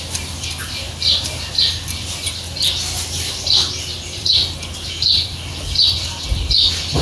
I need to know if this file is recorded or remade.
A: recorded